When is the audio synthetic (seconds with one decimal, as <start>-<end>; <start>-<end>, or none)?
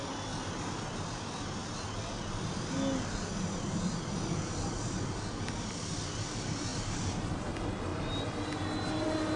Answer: 6.7-7.5